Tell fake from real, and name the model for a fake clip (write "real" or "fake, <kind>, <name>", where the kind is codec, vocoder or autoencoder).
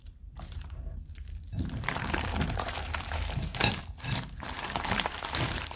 fake, vocoder, BigVGAN v2